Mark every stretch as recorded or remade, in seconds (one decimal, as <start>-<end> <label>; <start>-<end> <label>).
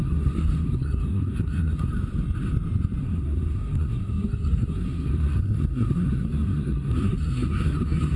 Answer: 0.0-1.9 remade; 1.9-3.0 recorded; 3.0-8.2 remade